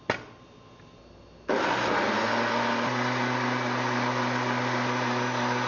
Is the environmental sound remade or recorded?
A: recorded